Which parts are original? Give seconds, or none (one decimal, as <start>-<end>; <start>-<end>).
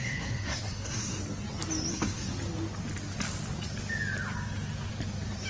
1.2-1.9; 2.3-5.5